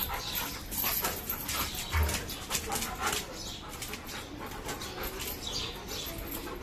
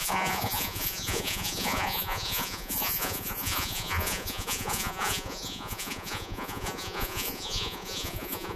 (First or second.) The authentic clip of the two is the first